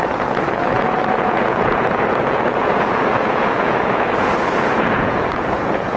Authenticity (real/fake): fake